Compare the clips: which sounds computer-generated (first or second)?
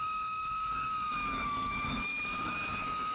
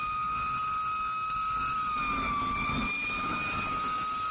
first